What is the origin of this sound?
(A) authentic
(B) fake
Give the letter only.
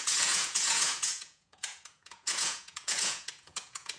B